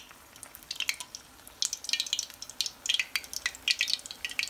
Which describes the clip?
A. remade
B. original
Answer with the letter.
B